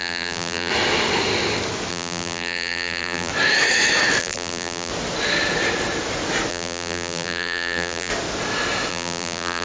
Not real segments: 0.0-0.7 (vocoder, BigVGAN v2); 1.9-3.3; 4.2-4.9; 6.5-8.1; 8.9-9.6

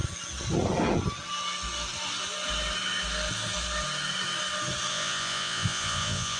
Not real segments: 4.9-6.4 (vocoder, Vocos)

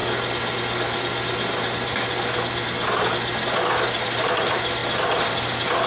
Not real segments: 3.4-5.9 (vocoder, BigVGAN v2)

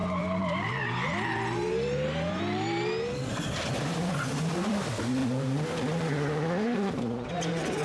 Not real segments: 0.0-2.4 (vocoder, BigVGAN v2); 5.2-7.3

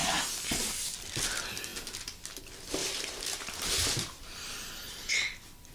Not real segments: 2.8-5.1 (vocoder, BigVGAN v2)

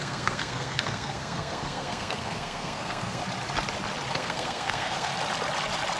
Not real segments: 0.0-3.2 (codec, SNAC); 4.1-5.1

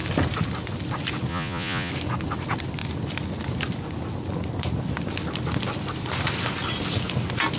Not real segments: 1.3-1.9 (vocoder, Vocos)

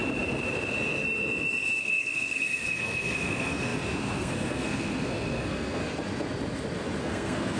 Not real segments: 1.8-5.8 (codec, SNAC); 7.0-7.6